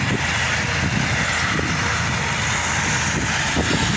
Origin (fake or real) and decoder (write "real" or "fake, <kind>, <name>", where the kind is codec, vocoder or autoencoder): real